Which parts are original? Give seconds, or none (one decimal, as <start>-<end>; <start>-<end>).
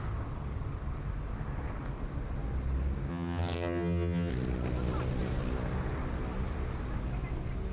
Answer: 0.0-3.1; 4.3-7.7